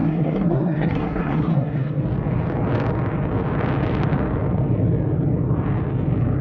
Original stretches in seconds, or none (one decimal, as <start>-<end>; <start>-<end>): 2.0-6.4